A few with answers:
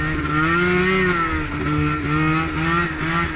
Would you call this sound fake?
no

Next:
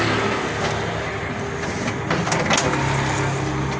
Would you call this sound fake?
no